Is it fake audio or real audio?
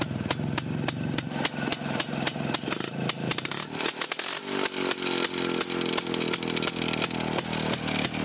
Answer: real